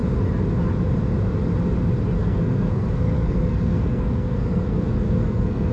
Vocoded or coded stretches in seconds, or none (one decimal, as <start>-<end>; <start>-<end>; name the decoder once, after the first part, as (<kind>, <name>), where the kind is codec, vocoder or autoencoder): 2.2-5.7 (codec, SNAC)